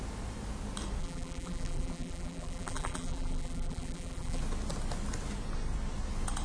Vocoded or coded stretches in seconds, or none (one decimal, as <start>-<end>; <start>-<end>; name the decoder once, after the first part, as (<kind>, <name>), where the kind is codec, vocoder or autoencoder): 1.0-4.4 (vocoder, BigVGAN v2)